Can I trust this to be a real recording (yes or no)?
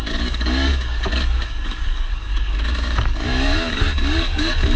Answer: no